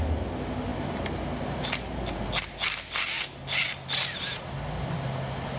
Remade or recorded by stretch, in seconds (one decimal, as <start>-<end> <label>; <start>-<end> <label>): 0.0-5.6 recorded